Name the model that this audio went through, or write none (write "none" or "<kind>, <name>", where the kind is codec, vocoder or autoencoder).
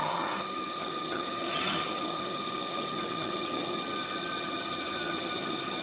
vocoder, HiFi-GAN